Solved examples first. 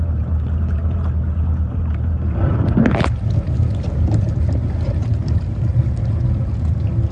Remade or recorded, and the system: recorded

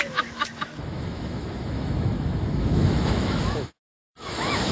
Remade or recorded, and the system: remade, autoencoder, DAC-VAE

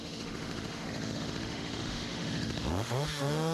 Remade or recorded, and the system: remade, autoencoder, DAC-VAE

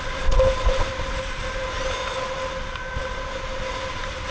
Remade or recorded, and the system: recorded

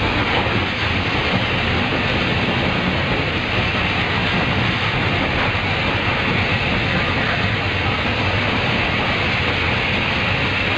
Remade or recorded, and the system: recorded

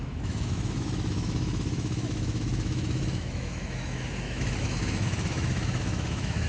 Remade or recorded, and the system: remade, autoencoder, DAC-VAE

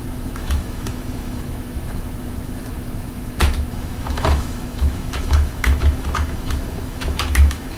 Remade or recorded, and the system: remade, autoencoder, DAC-VAE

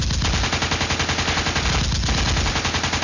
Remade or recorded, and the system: recorded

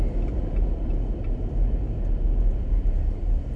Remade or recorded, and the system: recorded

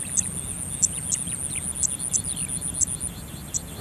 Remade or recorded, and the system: recorded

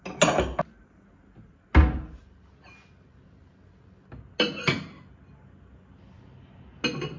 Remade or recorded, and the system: recorded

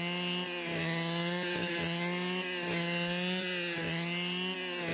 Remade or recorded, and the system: recorded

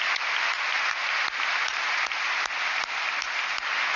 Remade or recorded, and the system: recorded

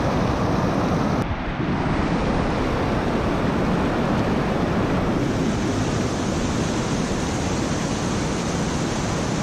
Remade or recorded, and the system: recorded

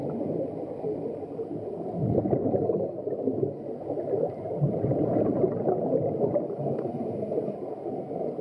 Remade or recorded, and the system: recorded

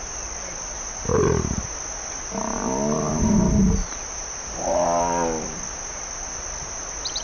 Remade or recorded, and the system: recorded